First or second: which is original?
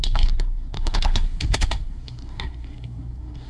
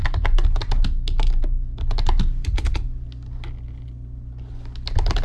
second